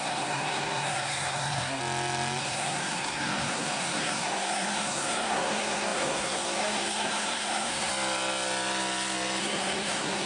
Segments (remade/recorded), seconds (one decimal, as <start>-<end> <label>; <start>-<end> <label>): 0.0-1.8 remade; 1.8-2.4 recorded; 2.4-7.9 remade; 7.9-9.4 recorded; 9.4-10.3 remade